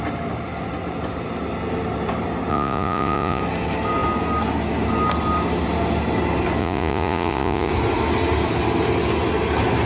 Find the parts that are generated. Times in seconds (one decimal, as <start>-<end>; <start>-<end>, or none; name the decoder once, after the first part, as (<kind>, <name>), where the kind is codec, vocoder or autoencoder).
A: 2.5-3.4 (vocoder, Vocos); 6.6-7.7